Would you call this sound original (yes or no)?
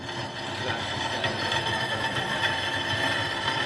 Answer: no